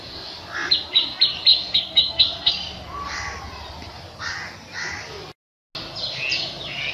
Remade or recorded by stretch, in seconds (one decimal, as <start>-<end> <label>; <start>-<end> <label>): 0.0-1.5 recorded; 1.5-2.5 remade; 2.5-6.9 recorded